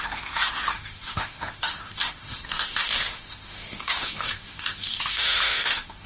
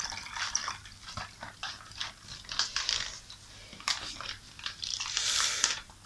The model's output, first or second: first